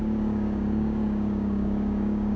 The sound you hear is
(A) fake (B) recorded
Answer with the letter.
A